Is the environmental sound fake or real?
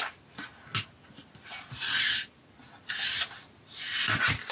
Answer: real